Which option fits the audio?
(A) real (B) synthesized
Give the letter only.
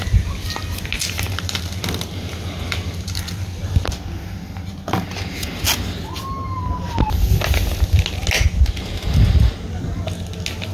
A